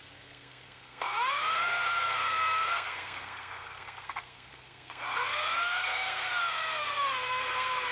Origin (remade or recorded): remade